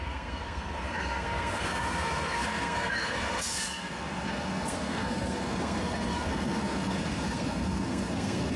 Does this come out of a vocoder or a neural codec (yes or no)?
yes